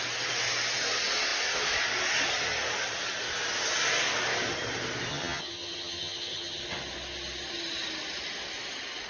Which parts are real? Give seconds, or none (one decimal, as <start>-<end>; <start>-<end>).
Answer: 0.0-5.1; 6.6-9.1